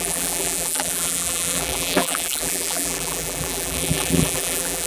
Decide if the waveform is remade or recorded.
remade